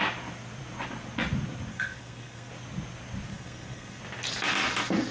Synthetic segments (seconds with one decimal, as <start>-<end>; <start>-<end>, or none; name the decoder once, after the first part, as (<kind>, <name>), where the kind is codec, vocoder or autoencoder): 1.7-2.5 (codec, SNAC); 3.3-4.0